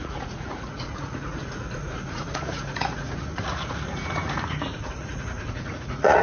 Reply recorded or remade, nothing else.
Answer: remade